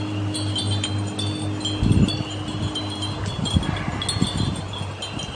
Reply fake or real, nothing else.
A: real